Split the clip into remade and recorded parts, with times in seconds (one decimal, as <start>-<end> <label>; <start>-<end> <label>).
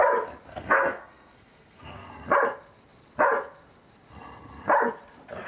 0.0-0.5 recorded; 0.5-2.1 remade; 2.1-5.5 recorded